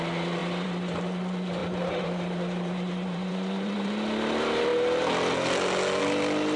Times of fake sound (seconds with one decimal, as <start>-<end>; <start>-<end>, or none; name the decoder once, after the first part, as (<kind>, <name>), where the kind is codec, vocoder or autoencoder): 0.4-1.0 (vocoder, BigVGAN v2); 1.6-3.9